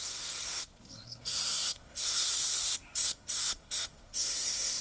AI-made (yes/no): yes